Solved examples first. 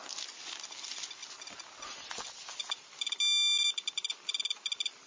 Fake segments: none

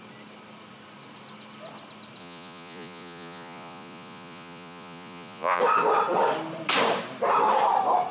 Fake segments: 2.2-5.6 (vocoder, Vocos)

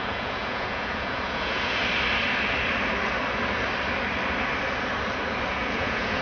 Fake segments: 0.0-1.8 (vocoder, Vocos); 5.5-6.2

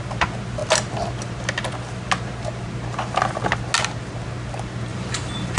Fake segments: 4.9-5.6 (vocoder, BigVGAN v2)

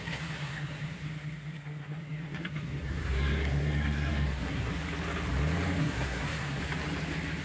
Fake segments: 0.0-4.7 (codec, SNAC); 5.8-6.6

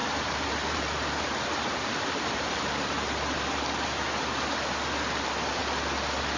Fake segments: 0.0-3.8 (vocoder, BigVGAN v2)

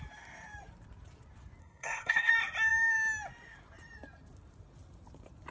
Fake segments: 1.6-2.3 (codec, SNAC)

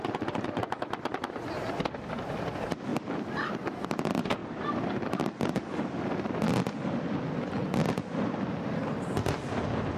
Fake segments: 2.9-3.8 (vocoder, BigVGAN v2); 4.4-6.4